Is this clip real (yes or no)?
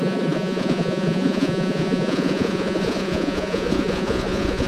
no